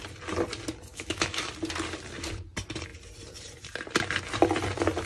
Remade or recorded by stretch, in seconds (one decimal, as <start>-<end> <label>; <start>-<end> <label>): 0.0-0.9 recorded; 0.9-1.5 remade; 1.5-5.0 recorded